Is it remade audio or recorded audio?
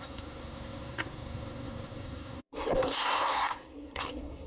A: remade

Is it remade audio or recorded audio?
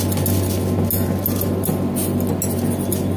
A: recorded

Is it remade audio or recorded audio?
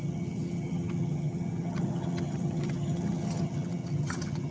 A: remade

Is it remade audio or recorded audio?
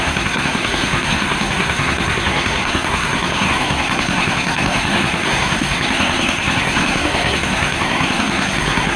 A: remade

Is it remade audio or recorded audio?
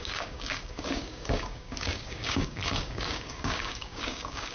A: remade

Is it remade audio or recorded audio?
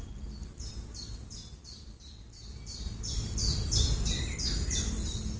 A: recorded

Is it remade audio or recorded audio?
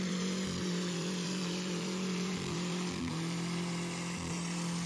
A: remade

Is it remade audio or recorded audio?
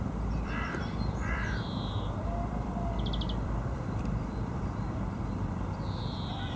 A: remade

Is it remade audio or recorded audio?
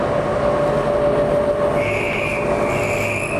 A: recorded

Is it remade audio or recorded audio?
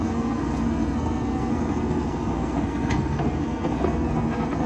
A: remade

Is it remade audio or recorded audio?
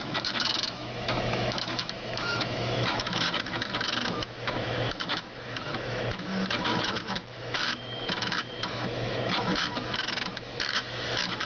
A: remade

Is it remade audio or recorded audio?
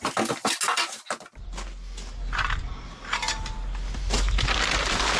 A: recorded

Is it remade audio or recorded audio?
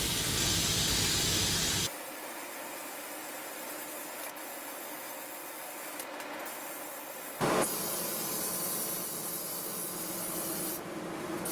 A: recorded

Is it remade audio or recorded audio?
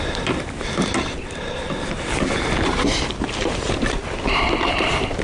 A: recorded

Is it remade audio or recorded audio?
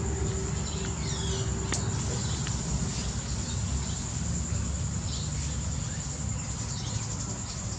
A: recorded